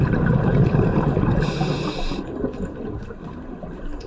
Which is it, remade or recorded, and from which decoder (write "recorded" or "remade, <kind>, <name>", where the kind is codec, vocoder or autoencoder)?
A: recorded